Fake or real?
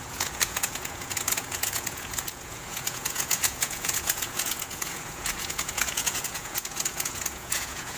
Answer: fake